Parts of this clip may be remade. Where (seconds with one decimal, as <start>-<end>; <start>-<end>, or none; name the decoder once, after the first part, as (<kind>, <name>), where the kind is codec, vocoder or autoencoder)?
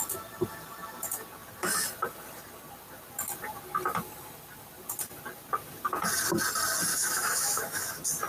6.9-7.9 (autoencoder, DAC-VAE)